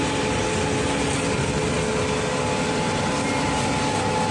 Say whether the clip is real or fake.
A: real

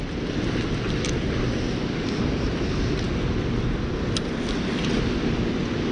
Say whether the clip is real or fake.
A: real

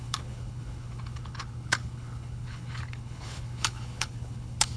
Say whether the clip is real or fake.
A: fake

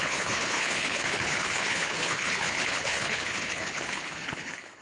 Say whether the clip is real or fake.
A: fake